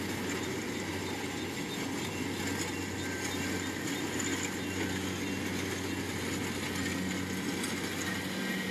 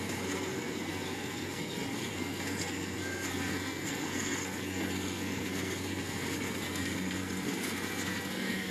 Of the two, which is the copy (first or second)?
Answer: second